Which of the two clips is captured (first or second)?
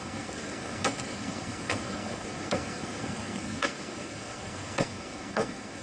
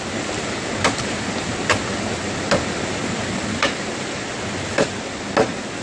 second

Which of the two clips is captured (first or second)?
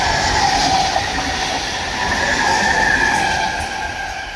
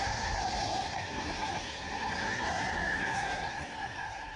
first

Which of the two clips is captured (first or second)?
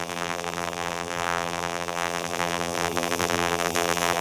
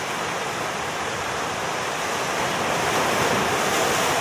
second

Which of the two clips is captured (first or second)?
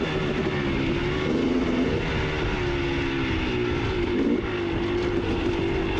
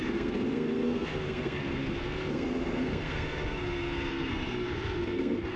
first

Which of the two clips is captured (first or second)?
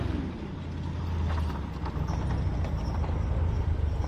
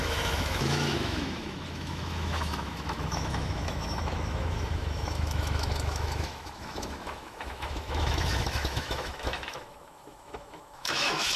first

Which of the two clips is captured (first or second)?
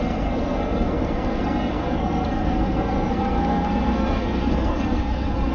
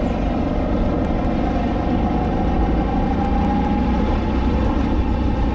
second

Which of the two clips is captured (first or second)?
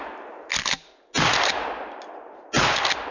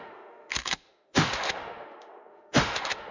first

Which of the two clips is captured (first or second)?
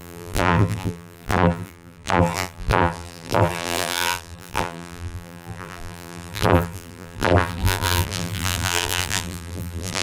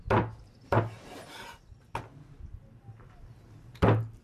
second